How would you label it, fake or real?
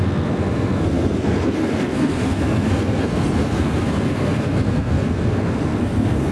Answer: fake